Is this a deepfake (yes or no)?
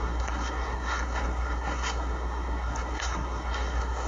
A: yes